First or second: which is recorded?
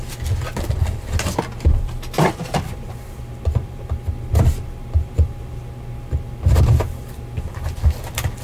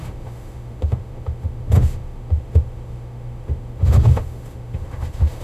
first